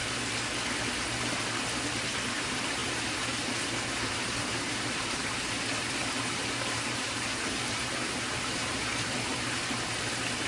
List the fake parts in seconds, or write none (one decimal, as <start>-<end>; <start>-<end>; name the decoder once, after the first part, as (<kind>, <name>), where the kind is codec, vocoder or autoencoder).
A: 2.3-10.5 (vocoder, BigVGAN v2)